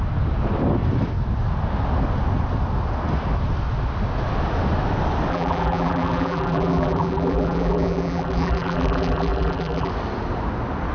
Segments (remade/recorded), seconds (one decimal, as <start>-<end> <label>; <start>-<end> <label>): 0.0-5.3 recorded; 5.3-9.9 remade; 9.9-10.9 recorded